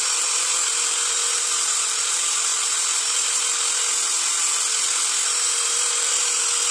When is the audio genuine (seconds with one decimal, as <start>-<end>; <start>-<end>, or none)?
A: 0.0-6.7